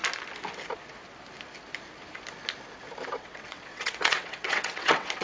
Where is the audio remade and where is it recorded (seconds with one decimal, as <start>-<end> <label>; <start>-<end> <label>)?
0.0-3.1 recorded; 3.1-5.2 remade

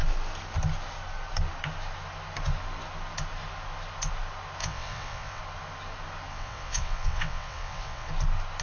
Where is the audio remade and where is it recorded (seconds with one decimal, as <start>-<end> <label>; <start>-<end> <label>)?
0.0-4.6 recorded; 4.6-5.4 remade; 5.4-6.3 recorded; 6.3-8.1 remade; 8.1-8.6 recorded

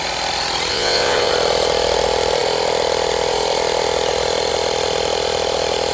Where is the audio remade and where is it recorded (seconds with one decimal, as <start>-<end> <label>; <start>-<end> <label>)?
0.0-0.7 recorded; 0.7-1.3 remade; 1.3-5.9 recorded

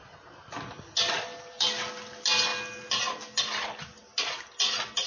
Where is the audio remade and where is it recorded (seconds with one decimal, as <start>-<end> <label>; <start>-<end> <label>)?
0.0-5.1 recorded

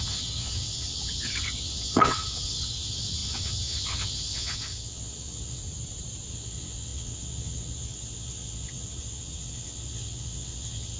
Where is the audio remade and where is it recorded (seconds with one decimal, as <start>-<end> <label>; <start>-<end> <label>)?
0.0-5.6 remade; 5.6-6.3 recorded; 6.3-11.0 remade